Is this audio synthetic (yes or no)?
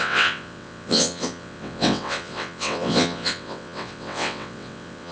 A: yes